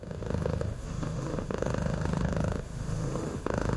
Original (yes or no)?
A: no